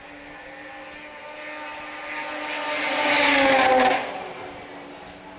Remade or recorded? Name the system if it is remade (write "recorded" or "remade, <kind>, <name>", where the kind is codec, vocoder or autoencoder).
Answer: recorded